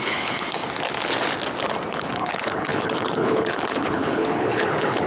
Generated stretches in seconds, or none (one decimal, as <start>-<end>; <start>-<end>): 0.0-0.6; 1.9-5.1